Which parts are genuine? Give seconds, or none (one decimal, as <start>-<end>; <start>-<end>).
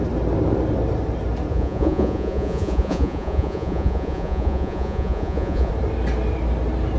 0.0-1.5; 5.7-7.0